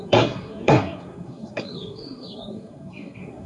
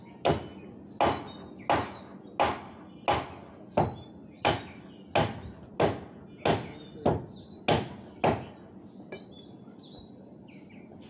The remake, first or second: first